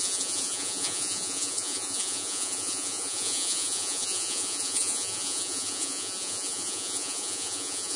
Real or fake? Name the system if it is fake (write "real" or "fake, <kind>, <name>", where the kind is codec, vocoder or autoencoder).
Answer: fake, vocoder, Vocos